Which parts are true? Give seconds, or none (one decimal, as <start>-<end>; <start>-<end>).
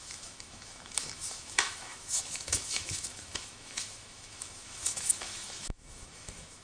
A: none